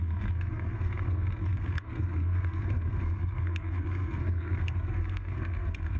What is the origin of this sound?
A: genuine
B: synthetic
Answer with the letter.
B